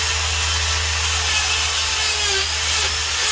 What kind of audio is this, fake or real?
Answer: real